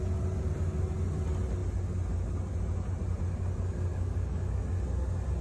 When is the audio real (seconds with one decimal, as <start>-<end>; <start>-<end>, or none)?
0.0-3.9; 4.6-5.4